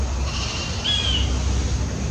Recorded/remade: recorded